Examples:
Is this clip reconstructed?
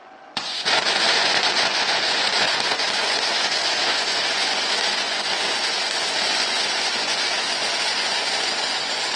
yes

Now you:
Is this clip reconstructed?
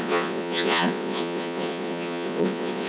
yes